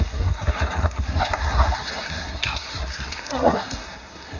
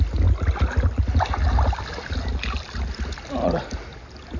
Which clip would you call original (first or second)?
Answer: second